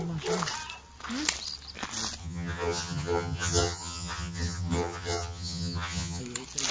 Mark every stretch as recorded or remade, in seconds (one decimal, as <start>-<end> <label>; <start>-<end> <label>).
0.0-2.2 recorded; 2.2-6.2 remade; 6.2-6.7 recorded